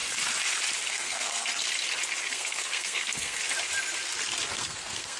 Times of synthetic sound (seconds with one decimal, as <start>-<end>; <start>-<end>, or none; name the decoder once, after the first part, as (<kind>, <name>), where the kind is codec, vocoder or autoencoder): 0.9-1.5 (codec, SNAC); 2.3-3.4; 4.5-5.2